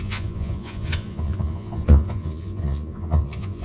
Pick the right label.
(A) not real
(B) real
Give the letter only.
A